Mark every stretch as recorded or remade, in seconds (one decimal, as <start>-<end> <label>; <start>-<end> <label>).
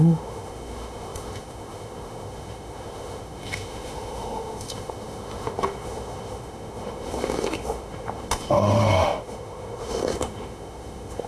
0.0-11.3 remade